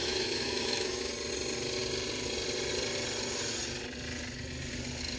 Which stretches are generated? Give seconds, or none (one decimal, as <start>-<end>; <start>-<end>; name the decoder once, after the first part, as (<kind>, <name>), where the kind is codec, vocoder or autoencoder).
0.0-1.1 (autoencoder, DAC-VAE)